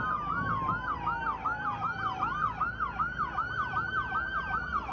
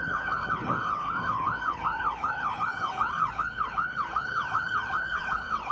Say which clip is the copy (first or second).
second